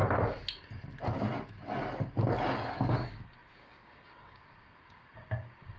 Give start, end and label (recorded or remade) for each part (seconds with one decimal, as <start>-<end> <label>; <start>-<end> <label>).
0.0-2.9 recorded; 2.9-5.8 remade